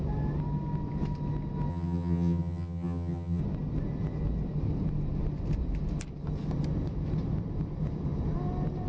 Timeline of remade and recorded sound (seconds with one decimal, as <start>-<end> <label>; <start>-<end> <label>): 0.0-1.7 recorded; 1.7-3.4 remade; 3.4-8.9 recorded